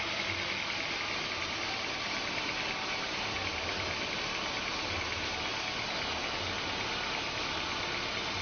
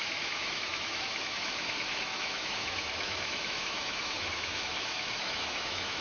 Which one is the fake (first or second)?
second